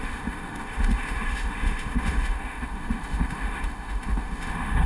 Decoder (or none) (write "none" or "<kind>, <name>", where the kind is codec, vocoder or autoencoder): autoencoder, DAC-VAE